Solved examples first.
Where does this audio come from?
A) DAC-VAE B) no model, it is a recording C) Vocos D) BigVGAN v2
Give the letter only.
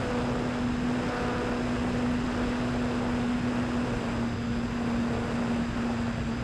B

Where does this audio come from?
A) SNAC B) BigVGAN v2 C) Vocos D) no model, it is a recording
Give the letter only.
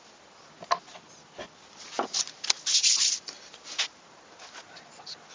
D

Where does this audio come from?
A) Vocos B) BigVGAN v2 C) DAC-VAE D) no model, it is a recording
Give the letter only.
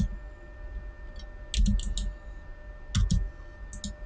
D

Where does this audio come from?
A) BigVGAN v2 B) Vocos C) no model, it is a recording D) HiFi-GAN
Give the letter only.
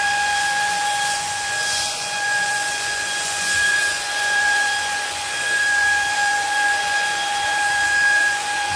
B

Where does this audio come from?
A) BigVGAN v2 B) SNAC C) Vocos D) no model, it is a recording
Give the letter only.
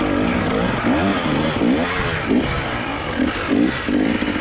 D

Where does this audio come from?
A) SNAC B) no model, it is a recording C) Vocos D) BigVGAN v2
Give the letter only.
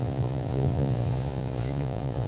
C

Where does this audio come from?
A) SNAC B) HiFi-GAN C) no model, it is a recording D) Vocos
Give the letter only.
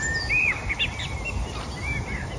C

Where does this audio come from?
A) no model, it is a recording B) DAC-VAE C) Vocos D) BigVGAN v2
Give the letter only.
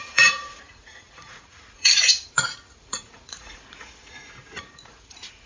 C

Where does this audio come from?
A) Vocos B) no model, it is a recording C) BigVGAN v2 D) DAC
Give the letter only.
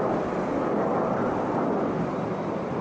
B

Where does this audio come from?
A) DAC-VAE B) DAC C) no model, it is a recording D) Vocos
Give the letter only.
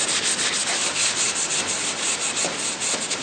C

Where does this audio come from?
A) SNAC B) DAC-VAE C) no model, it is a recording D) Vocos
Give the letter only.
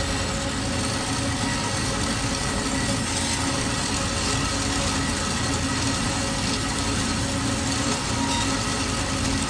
C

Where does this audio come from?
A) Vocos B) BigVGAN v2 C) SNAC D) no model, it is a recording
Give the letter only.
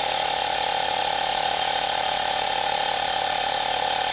A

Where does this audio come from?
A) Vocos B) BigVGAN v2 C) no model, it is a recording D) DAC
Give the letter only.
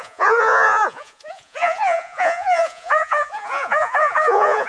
A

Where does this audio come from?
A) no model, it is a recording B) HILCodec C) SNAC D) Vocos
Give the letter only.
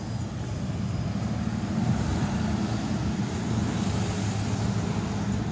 A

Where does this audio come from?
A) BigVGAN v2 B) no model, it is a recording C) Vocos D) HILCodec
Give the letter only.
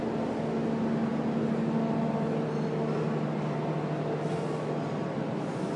B